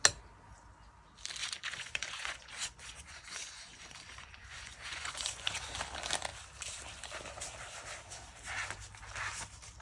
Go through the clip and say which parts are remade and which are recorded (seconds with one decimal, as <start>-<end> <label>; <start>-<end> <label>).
0.0-1.4 recorded; 1.4-5.8 remade; 5.8-9.8 recorded